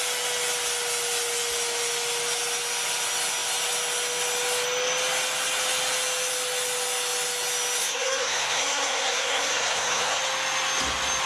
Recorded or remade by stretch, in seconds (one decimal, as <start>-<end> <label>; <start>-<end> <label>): 0.0-7.8 recorded; 7.8-10.2 remade; 10.2-11.3 recorded